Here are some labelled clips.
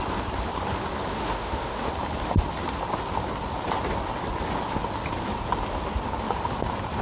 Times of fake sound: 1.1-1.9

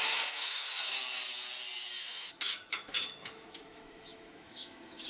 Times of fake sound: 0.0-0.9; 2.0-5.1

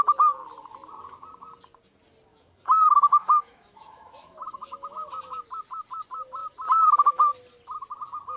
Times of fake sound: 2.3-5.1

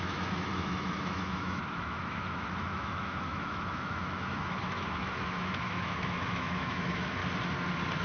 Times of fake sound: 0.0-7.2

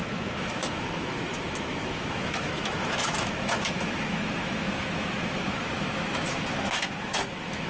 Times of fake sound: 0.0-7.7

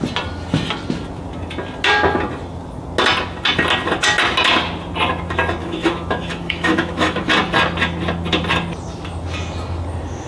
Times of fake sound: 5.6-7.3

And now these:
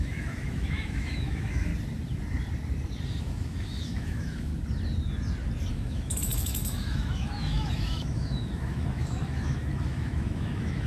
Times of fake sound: 0.0-1.7; 3.2-4.5; 5.7-10.9